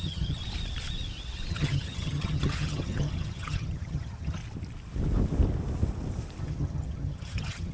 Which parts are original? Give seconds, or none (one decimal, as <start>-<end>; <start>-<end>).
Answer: 0.4-1.5; 4.4-6.4